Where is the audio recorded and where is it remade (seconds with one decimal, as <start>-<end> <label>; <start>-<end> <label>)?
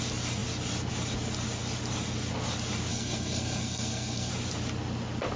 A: 0.0-2.9 recorded; 2.9-4.3 remade; 4.3-5.4 recorded